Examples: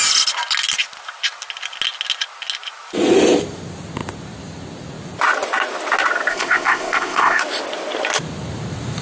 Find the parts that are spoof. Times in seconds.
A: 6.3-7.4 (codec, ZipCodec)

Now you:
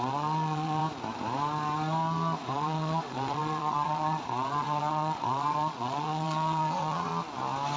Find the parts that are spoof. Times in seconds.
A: 0.0-0.8 (vocoder, Vocos); 2.5-7.1

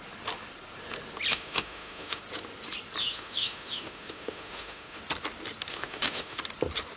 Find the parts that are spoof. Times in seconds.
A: 1.3-2.2 (autoencoder, DAC-VAE); 3.0-5.0; 5.7-6.4

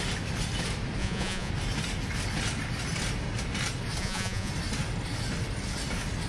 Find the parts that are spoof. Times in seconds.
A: 1.0-1.5 (vocoder, Vocos); 4.0-4.5